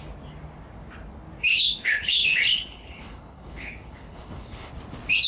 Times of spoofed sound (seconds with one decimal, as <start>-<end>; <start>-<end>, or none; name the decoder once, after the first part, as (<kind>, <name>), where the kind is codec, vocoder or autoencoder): 1.5-4.7 (codec, HILCodec)